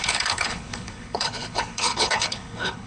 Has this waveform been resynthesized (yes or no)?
yes